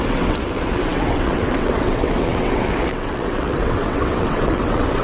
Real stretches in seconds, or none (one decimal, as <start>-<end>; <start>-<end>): none